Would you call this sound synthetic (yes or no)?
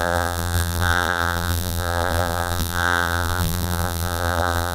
yes